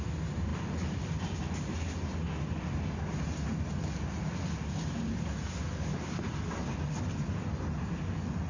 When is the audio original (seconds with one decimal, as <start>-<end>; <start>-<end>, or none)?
0.0-8.5

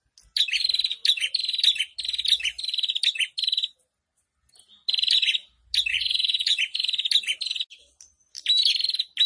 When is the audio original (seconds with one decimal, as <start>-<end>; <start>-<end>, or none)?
0.0-5.9; 6.6-9.3

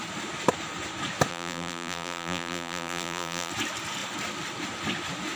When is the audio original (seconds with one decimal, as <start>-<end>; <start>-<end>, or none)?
0.0-1.3; 3.5-5.4

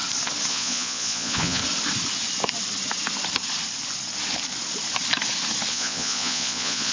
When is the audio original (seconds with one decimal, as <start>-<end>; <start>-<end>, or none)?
0.0-0.5; 1.6-5.7

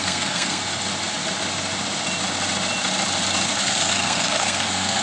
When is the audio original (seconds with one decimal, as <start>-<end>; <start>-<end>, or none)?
0.6-3.6

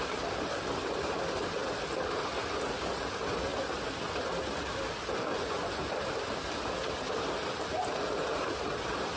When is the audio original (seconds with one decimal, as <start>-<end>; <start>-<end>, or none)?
0.0-5.3; 5.9-9.2

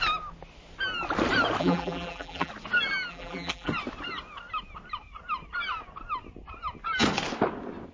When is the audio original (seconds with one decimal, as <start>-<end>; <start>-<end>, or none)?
0.0-1.6; 2.5-3.1; 3.7-7.9